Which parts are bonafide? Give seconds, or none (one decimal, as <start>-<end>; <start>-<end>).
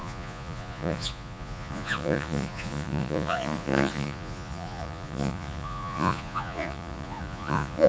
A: none